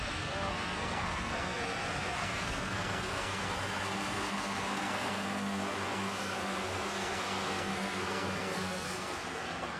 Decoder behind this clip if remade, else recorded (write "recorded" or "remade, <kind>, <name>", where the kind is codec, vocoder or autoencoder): remade, codec, SNAC